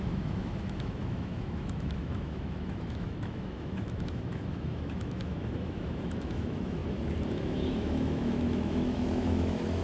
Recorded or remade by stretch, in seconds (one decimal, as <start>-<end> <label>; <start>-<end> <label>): 0.0-6.8 remade; 6.8-7.3 recorded; 7.3-9.8 remade